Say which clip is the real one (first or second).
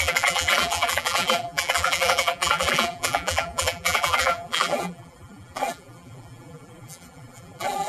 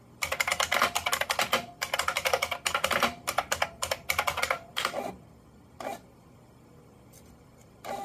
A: second